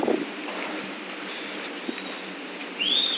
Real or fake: real